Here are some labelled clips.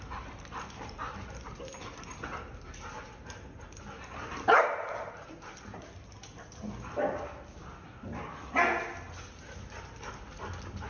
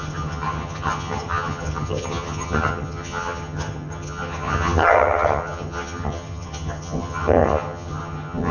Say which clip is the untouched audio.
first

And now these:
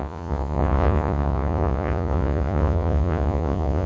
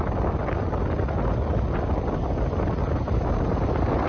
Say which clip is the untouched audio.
second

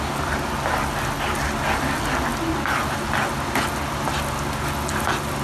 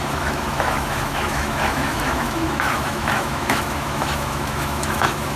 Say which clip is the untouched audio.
first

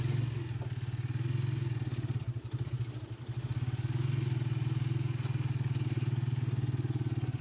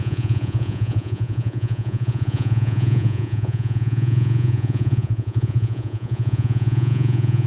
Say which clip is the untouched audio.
first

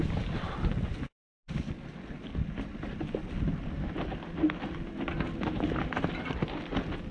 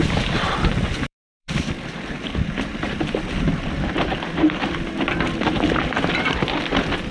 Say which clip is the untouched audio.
first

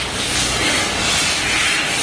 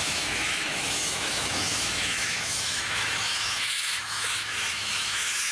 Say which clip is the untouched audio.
first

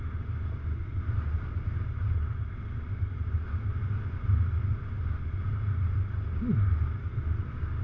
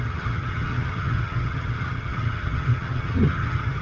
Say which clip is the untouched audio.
first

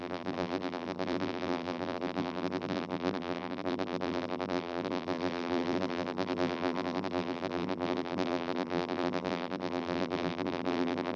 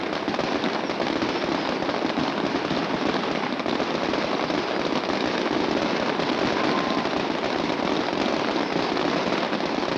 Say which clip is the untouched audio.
second